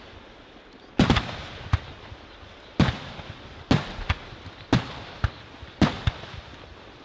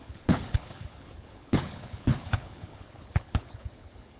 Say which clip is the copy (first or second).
second